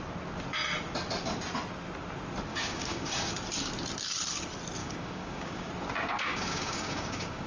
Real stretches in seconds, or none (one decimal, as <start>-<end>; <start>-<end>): 0.0-2.5; 3.3-4.8; 5.7-6.3